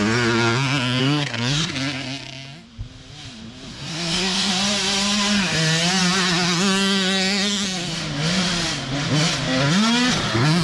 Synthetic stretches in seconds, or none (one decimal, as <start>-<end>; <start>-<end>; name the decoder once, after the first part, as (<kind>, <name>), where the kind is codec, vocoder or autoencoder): 1.0-1.7 (codec, SNAC); 3.7-4.5